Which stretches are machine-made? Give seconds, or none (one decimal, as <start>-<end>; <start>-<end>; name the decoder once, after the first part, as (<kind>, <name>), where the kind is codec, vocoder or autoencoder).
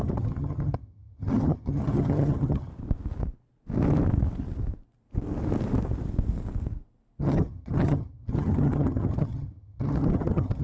0.0-2.7 (vocoder, HiFi-GAN); 7.2-10.6